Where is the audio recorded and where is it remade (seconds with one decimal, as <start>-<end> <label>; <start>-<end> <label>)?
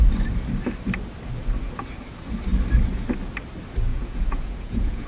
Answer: 0.0-3.9 recorded; 3.9-5.1 remade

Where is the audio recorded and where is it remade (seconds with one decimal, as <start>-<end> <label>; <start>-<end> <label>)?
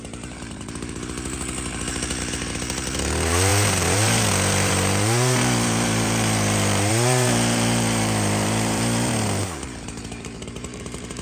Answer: 0.0-11.2 remade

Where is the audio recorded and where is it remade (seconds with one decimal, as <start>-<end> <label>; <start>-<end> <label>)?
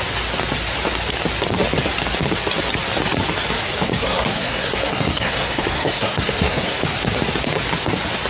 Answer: 0.0-3.9 recorded; 3.9-6.8 remade; 6.8-8.3 recorded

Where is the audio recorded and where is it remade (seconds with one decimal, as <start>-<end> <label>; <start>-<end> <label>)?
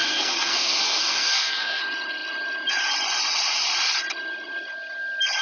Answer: 0.0-1.8 remade; 1.8-5.4 recorded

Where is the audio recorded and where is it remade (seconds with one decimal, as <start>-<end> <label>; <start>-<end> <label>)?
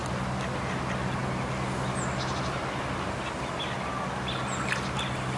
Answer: 0.0-5.4 recorded